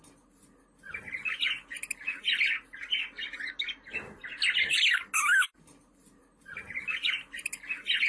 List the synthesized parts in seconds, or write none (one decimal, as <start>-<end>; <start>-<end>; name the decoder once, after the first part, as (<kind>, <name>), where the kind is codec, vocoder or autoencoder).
none